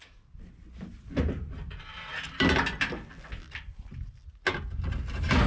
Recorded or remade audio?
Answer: recorded